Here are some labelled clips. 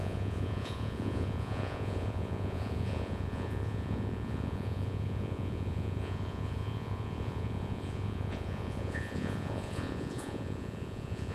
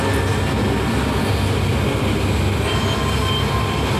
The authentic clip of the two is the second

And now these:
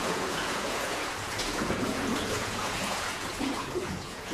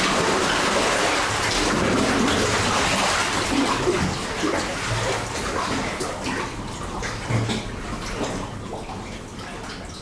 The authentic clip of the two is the second